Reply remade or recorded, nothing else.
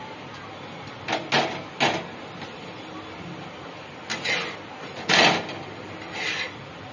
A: recorded